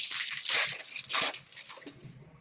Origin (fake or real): real